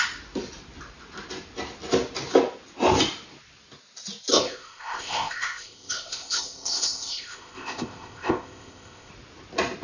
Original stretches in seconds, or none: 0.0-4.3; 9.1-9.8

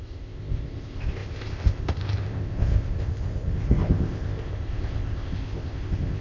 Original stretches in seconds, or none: none

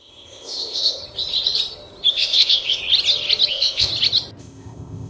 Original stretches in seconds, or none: 1.0-2.1; 2.8-3.5; 3.9-4.4

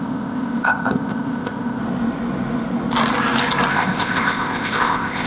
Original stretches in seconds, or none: 1.8-3.7

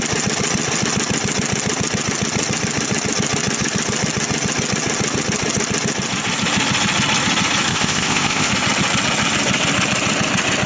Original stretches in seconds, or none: 0.0-7.7; 8.5-10.7

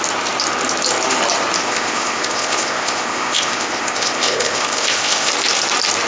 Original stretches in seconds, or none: 0.0-1.6; 5.3-6.1

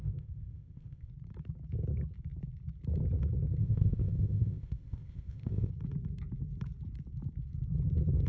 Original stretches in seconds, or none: 1.1-3.6; 5.7-8.3

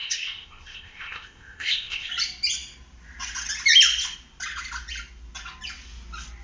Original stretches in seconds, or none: 2.1-6.4